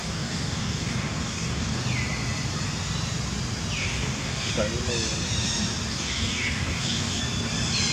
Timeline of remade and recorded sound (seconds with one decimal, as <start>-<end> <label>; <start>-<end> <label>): 0.0-1.8 remade; 1.8-3.8 recorded; 3.8-4.5 remade; 4.5-5.9 recorded; 5.9-7.2 remade; 7.2-7.9 recorded